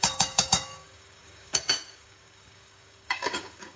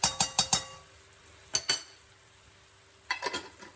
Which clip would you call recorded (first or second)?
second